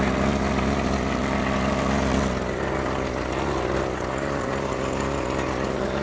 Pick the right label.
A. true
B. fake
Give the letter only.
A